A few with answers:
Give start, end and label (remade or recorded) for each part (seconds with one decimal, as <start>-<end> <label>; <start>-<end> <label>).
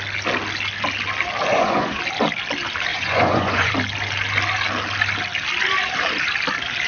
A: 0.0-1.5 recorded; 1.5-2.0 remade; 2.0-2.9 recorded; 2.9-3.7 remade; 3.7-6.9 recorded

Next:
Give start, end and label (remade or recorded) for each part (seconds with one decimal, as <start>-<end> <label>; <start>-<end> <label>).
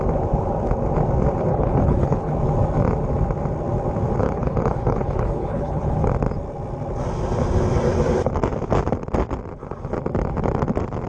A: 0.0-1.5 recorded; 1.5-2.3 remade; 2.3-4.2 recorded; 4.2-6.1 remade; 6.1-11.1 recorded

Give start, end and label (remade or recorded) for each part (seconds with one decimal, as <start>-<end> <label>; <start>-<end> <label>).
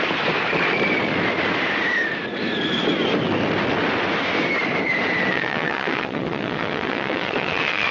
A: 0.0-5.3 recorded; 5.3-7.9 remade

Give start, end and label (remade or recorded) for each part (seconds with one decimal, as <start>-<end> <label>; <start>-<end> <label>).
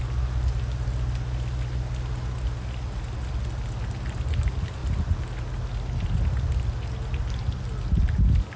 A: 0.0-8.6 recorded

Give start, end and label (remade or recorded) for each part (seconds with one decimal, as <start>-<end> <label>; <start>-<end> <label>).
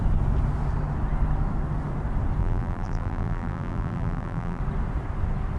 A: 0.0-2.4 recorded; 2.4-4.6 remade; 4.6-5.6 recorded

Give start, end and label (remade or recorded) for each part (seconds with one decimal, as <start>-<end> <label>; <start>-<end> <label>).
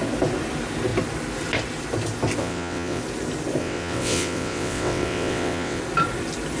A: 0.0-2.4 recorded; 2.4-3.0 remade; 3.0-3.6 recorded; 3.6-5.8 remade; 5.8-6.6 recorded